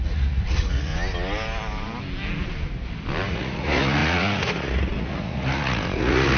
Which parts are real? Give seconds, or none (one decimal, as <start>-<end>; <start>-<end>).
0.9-3.3